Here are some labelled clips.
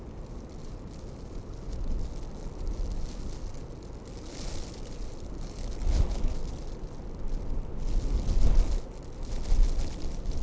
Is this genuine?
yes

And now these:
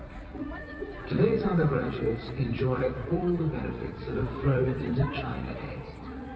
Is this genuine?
no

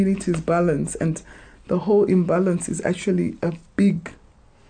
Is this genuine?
yes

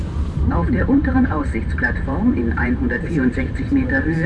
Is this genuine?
no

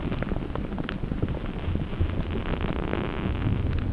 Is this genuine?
yes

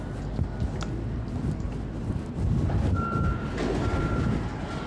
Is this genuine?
yes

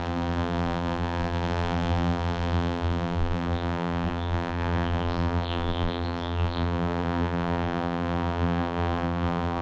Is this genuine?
no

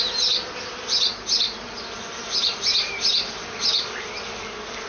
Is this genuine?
yes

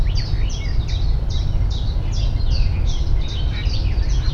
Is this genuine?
yes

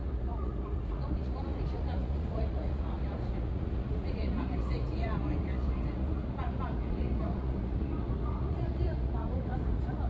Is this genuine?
no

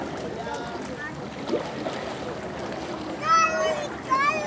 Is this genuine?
yes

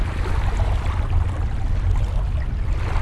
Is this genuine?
yes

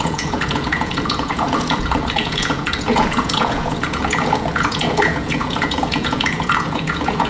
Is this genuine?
no